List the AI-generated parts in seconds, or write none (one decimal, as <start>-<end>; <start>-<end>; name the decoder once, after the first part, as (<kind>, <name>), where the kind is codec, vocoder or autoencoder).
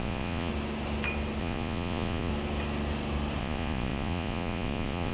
0.0-0.5 (vocoder, Vocos); 1.4-2.3; 3.4-5.1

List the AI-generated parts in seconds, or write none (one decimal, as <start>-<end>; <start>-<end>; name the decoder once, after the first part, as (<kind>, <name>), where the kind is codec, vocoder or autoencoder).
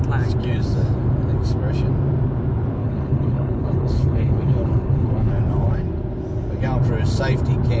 2.8-5.3 (codec, HILCodec)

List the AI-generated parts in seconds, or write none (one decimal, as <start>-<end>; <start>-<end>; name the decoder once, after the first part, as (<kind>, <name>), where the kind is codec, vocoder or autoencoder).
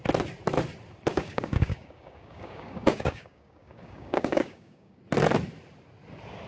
1.1-5.0 (codec, DAC)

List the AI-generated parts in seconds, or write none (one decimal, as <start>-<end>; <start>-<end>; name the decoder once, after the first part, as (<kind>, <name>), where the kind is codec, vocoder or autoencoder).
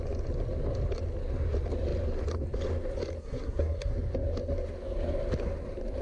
3.2-3.9 (codec, SNAC)